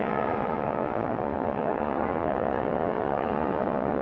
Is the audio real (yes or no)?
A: no